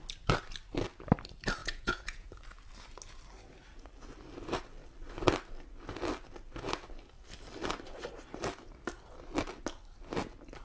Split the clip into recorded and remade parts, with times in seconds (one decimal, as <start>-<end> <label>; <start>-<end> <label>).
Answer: 0.0-1.6 recorded; 1.6-2.3 remade; 2.3-10.6 recorded